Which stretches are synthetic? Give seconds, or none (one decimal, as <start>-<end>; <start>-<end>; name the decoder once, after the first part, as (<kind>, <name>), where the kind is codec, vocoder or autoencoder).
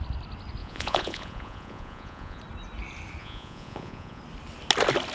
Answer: 0.6-2.4 (vocoder, Vocos); 3.2-4.2